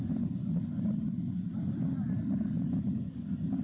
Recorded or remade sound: recorded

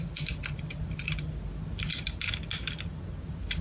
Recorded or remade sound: recorded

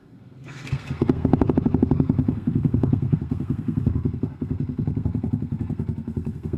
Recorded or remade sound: remade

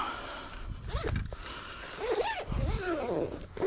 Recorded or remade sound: recorded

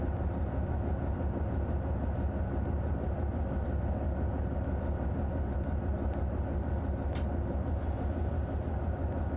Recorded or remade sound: recorded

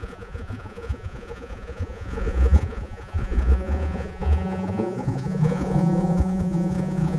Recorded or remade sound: remade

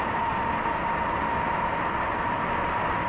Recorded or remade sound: recorded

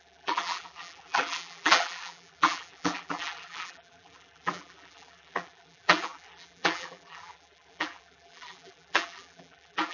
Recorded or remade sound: remade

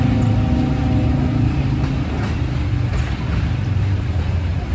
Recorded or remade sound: recorded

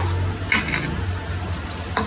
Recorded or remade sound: recorded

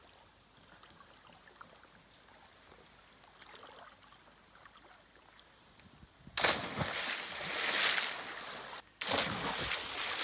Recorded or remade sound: recorded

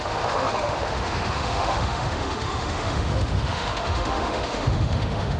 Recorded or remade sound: remade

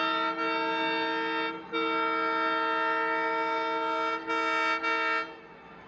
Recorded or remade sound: recorded